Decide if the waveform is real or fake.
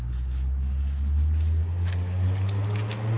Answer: real